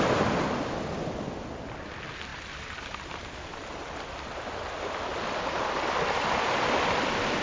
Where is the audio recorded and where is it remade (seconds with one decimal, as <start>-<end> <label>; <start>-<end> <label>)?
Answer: 0.0-7.4 recorded